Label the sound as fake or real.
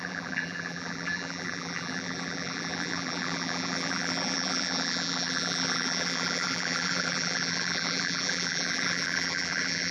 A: fake